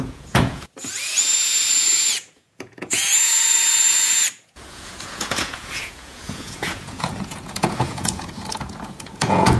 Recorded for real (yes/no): no